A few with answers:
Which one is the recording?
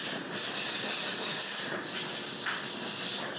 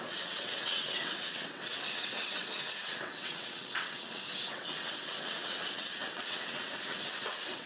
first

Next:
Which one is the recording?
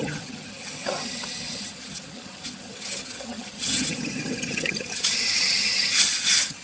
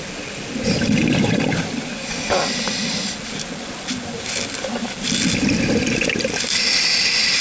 second